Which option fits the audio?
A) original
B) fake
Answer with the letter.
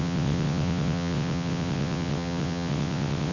B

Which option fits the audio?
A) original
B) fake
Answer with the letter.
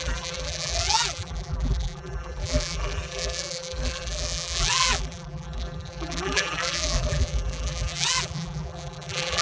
B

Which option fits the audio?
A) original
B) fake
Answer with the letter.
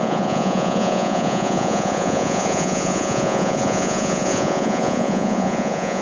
B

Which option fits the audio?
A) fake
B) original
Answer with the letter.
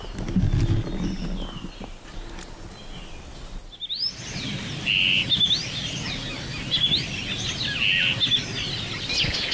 B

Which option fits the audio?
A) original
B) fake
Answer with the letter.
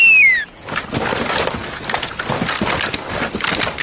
A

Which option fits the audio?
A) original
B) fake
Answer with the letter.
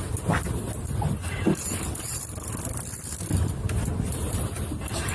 A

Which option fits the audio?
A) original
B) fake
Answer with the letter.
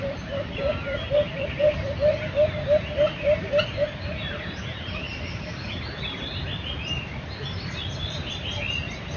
A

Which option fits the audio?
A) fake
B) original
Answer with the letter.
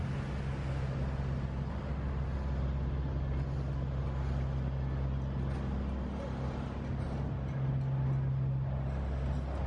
B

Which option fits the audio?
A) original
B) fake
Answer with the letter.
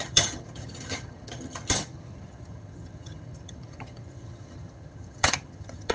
B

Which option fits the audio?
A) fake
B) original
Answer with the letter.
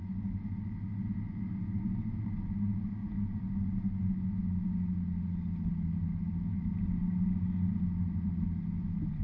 B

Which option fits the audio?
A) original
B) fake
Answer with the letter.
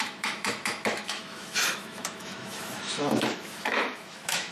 B